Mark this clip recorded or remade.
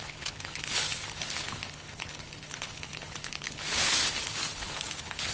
remade